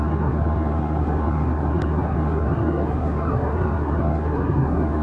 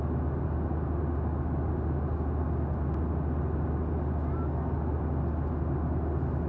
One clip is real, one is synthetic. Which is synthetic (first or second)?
first